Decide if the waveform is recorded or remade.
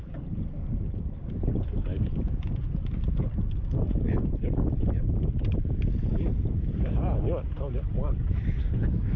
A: recorded